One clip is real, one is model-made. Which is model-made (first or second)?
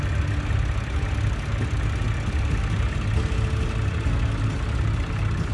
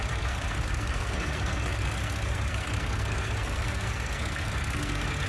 second